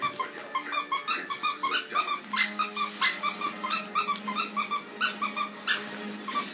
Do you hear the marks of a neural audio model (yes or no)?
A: no